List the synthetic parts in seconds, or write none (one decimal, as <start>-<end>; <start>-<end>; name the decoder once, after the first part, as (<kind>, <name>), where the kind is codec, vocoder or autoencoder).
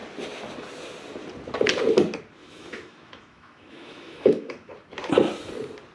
2.4-4.7 (autoencoder, DAC-VAE)